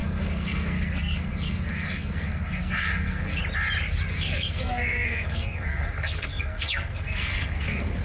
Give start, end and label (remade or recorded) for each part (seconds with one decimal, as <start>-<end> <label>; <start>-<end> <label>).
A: 0.0-3.4 remade; 3.4-4.1 recorded; 4.1-8.0 remade